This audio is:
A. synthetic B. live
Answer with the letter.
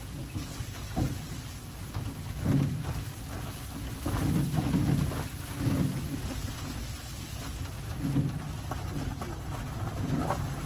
B